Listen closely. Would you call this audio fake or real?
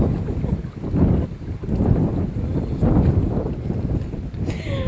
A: real